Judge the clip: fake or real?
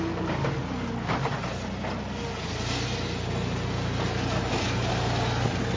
real